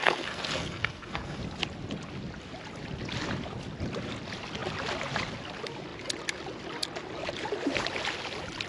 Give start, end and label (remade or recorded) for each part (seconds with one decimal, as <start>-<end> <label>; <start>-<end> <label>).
0.0-1.4 remade; 1.4-8.7 recorded